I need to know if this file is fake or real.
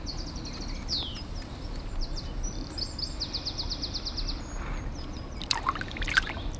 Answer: real